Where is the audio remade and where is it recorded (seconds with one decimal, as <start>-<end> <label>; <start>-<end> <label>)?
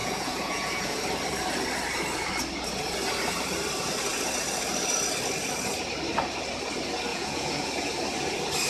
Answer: 0.0-1.0 remade; 1.0-7.1 recorded; 7.1-7.9 remade; 7.9-8.7 recorded